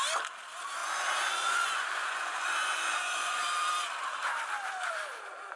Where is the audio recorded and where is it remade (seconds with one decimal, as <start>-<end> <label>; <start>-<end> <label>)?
0.0-0.8 recorded; 0.8-3.7 remade; 3.7-5.6 recorded